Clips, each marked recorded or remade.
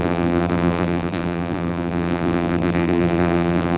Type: remade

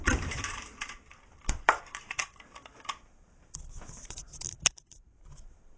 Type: remade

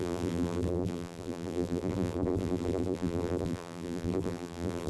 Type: remade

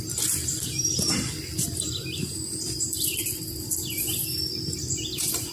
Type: remade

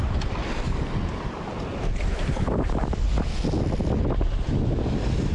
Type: recorded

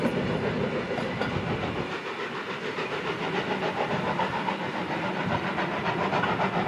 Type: recorded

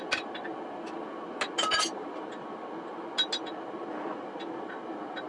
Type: recorded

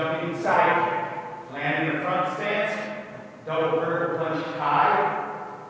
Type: recorded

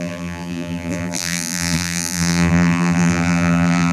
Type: remade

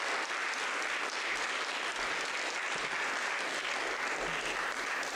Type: recorded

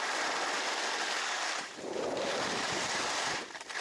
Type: remade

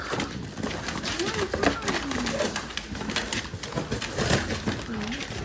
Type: recorded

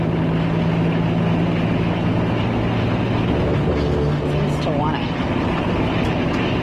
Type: recorded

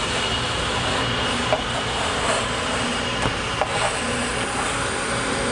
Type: recorded